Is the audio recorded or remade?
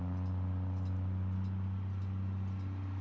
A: recorded